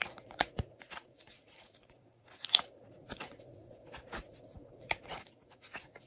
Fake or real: fake